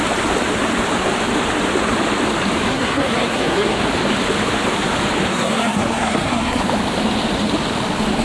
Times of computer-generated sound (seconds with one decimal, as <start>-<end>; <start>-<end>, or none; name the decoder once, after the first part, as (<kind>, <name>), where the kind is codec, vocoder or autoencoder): 2.7-3.8 (codec, SNAC); 5.3-6.6